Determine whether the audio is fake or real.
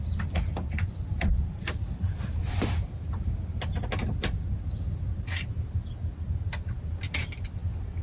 real